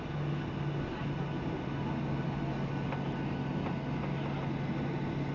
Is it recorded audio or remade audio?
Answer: recorded